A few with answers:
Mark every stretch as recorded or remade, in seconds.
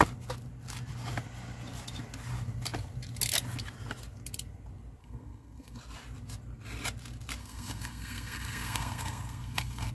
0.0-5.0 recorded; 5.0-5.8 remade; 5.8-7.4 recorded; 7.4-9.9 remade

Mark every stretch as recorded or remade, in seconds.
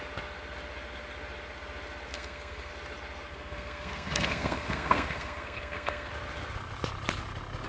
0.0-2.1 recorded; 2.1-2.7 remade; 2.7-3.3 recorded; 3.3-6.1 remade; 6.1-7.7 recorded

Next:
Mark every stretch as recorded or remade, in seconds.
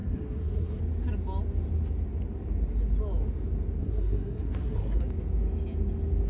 0.0-0.8 remade; 0.8-3.8 recorded; 3.8-5.0 remade; 5.0-6.3 recorded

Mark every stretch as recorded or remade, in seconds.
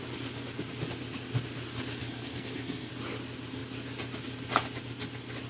0.0-2.0 recorded; 2.0-2.9 remade; 2.9-5.5 recorded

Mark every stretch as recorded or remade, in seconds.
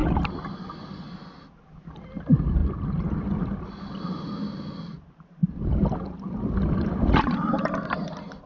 0.0-8.5 recorded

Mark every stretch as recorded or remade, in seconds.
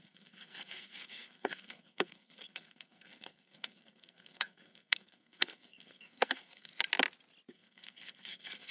0.0-6.7 remade; 6.7-7.5 recorded; 7.5-8.7 remade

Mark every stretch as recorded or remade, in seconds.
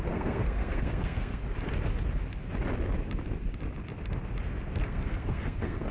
0.0-1.4 remade; 1.4-4.8 recorded; 4.8-5.9 remade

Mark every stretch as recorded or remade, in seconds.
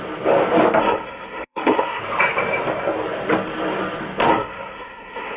0.0-0.8 recorded; 0.8-2.0 remade; 2.0-4.3 recorded; 4.3-5.4 remade